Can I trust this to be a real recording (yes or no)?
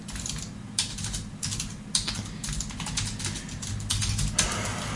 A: yes